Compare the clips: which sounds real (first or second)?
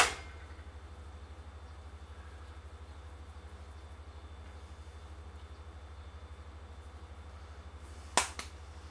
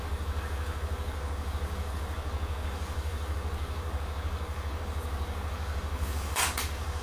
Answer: first